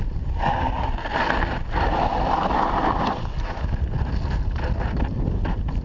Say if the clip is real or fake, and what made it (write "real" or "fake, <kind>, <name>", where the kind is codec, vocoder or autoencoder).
real